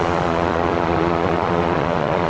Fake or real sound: fake